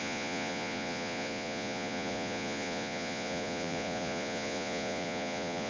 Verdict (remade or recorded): remade